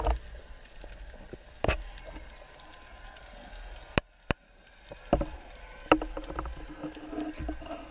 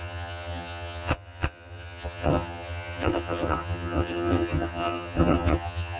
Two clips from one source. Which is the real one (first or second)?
first